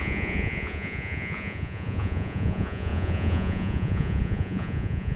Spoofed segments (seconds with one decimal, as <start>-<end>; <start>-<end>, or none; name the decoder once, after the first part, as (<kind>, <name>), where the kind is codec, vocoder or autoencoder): 0.0-5.2 (vocoder, Vocos)